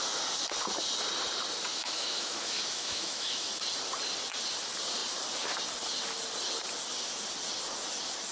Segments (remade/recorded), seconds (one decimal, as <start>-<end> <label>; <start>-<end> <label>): 0.0-1.7 recorded; 1.7-3.5 remade; 3.5-8.3 recorded